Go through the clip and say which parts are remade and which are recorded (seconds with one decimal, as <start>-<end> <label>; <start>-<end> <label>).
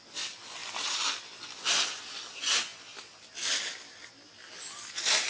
0.0-5.3 recorded